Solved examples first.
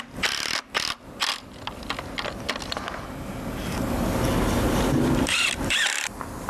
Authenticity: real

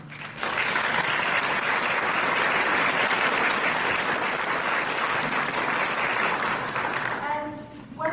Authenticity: real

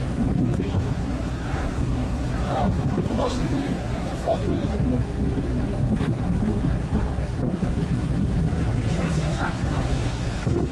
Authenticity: fake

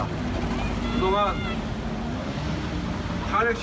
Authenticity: real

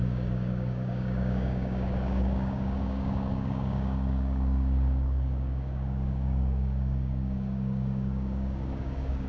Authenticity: fake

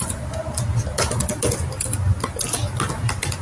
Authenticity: real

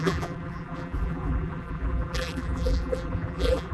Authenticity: fake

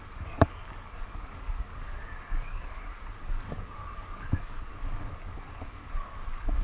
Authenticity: fake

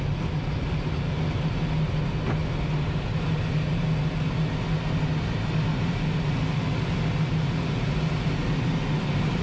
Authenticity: real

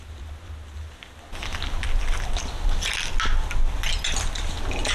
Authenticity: real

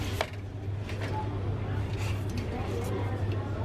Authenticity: real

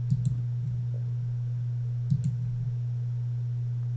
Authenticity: real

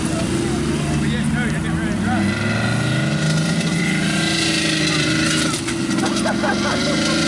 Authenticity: real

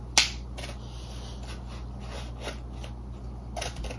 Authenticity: real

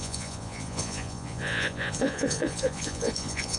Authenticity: fake